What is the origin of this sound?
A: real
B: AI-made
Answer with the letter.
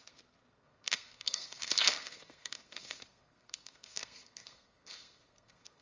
B